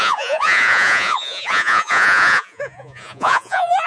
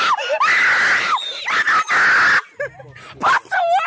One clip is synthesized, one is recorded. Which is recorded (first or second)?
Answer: second